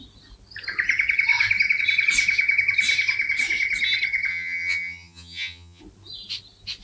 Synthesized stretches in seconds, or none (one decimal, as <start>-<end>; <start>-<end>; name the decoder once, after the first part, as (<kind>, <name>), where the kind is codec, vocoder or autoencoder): 4.3-5.8 (vocoder, HiFi-GAN)